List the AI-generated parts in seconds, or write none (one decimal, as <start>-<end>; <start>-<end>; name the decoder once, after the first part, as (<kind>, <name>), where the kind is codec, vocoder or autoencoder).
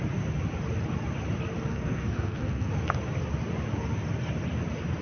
1.7-2.7 (codec, SNAC)